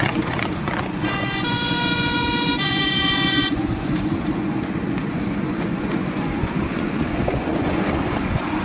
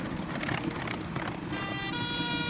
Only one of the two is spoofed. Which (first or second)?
first